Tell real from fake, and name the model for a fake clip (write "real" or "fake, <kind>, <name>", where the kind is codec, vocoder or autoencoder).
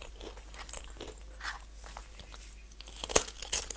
real